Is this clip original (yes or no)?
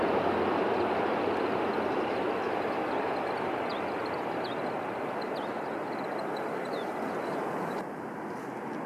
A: yes